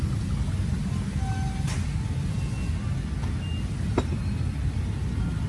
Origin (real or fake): real